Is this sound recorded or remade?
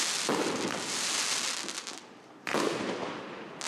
recorded